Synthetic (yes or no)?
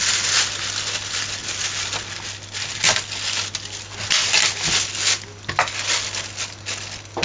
no